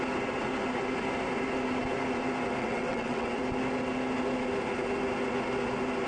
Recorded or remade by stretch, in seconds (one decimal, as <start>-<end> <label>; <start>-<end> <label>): 0.0-2.6 recorded; 2.6-3.4 remade; 3.4-6.1 recorded